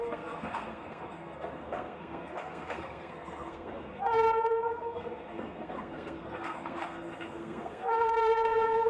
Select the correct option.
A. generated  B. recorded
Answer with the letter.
A